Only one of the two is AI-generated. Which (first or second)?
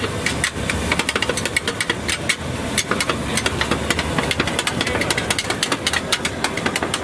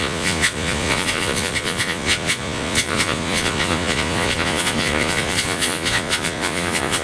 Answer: second